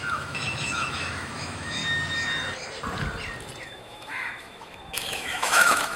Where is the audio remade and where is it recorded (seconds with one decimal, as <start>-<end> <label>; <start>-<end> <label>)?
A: 0.0-1.8 remade; 1.8-3.6 recorded; 3.6-6.0 remade